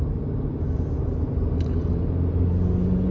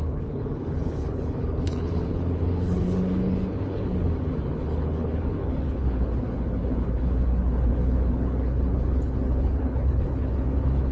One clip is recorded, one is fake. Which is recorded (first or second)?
first